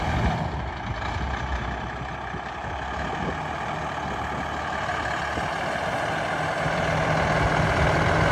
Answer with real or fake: real